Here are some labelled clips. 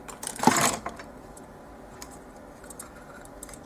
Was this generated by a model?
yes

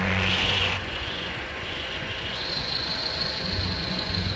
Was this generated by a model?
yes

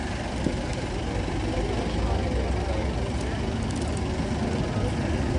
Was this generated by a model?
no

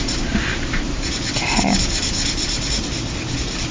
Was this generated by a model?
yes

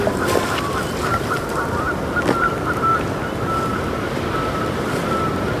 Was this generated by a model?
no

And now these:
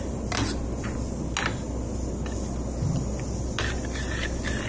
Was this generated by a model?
no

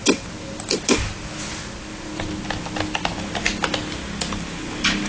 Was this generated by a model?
no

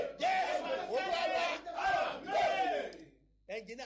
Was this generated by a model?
no